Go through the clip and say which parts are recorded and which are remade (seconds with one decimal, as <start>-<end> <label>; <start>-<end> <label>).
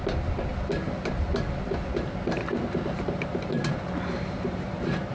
0.0-5.1 recorded